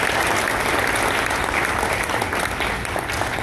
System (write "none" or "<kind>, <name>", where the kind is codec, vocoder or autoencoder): none